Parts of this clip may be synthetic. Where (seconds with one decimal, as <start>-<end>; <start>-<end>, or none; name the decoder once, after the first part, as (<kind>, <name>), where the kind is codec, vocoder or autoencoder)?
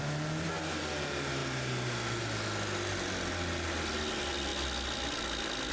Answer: none